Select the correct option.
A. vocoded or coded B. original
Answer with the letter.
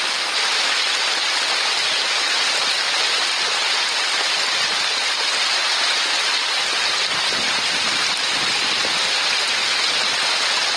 B